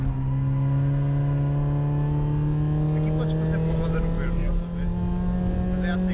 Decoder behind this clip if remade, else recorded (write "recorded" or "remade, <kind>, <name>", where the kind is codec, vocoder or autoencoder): recorded